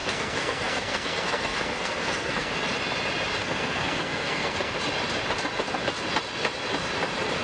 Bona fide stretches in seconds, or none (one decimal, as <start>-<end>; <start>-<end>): 2.5-3.4; 4.8-7.4